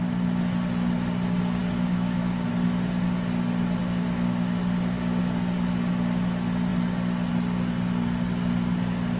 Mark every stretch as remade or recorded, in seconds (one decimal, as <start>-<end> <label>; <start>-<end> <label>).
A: 0.0-1.6 recorded; 1.6-2.5 remade; 2.5-3.8 recorded; 3.8-5.2 remade; 5.2-9.2 recorded